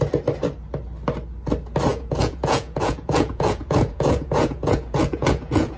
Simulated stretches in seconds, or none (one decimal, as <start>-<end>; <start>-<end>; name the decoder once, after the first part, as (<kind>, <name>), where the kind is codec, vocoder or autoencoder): 1.9-5.8 (vocoder, Vocos)